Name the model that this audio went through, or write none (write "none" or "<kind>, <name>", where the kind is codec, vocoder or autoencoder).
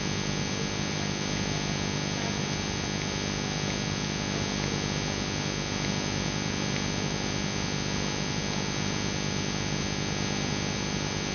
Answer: none